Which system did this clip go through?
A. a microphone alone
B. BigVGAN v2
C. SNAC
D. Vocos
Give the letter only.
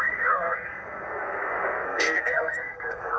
C